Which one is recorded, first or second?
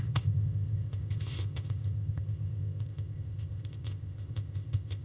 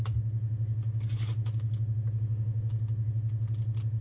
second